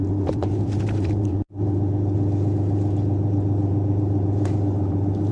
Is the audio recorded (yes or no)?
no